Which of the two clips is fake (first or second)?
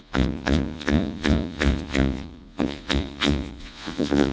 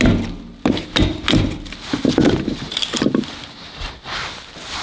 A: first